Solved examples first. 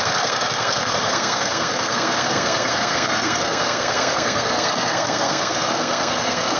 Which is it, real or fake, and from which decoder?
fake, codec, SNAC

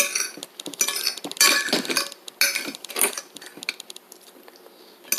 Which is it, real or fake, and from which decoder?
real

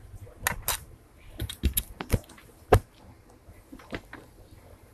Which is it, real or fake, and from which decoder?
real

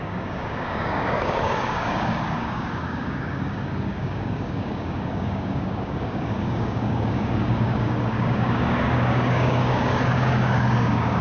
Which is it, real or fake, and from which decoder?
fake, codec, DAC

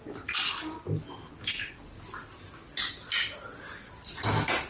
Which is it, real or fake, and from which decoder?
real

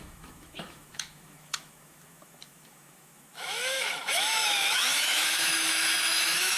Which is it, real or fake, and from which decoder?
fake, autoencoder, DAC-VAE